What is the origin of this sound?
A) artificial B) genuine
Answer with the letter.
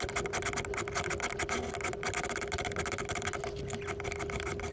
B